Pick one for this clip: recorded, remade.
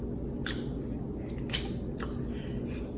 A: recorded